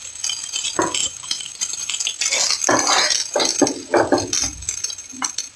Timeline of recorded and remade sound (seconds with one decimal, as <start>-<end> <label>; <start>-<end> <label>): 0.0-1.0 recorded; 1.0-1.9 remade; 1.9-5.6 recorded